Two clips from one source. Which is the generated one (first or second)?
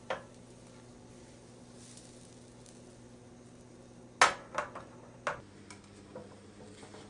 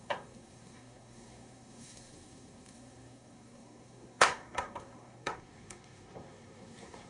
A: second